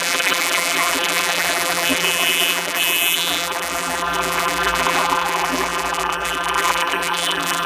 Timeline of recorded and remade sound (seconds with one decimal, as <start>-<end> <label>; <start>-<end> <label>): 0.0-7.7 remade